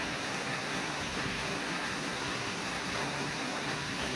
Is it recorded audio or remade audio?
remade